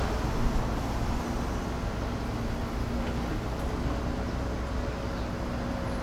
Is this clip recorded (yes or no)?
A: yes